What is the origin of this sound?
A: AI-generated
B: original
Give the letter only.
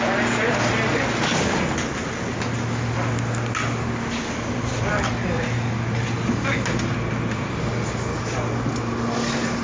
B